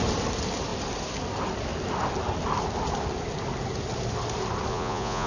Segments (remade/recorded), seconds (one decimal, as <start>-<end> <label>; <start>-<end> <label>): 0.0-4.7 recorded; 4.7-5.3 remade